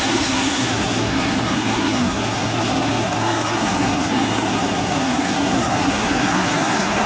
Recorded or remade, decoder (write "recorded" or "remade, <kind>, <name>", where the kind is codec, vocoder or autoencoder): remade, codec, SNAC